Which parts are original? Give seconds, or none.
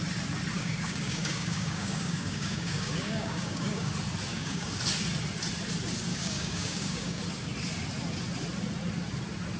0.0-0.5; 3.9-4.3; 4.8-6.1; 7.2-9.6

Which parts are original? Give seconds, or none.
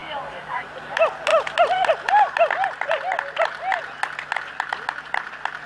0.6-5.7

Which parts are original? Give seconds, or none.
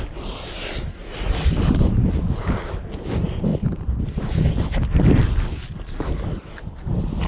0.0-1.0; 2.6-3.5; 4.1-7.3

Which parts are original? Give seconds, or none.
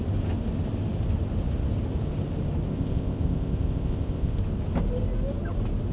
0.0-2.7; 4.4-5.9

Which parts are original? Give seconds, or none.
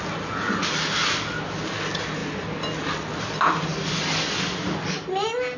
0.0-5.6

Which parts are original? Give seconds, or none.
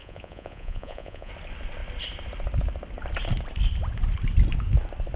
1.3-5.2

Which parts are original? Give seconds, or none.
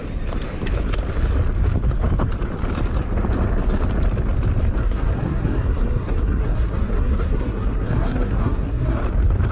0.0-4.8; 9.0-9.5